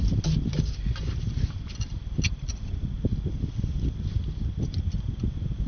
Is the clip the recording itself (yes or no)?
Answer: yes